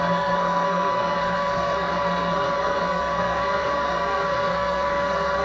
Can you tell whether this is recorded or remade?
remade